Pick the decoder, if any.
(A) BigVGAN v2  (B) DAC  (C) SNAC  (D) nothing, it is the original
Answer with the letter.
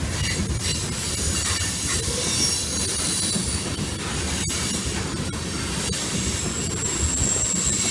D